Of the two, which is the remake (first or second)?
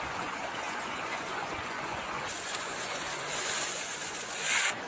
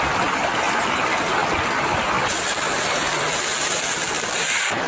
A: first